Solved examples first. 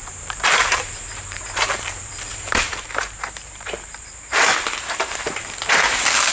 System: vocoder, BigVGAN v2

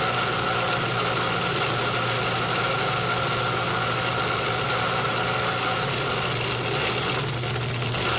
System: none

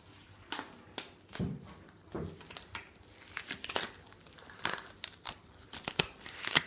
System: none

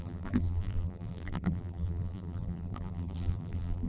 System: vocoder, BigVGAN v2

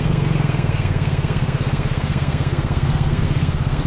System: codec, SNAC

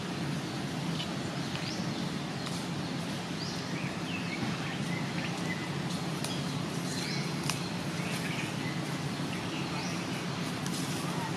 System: none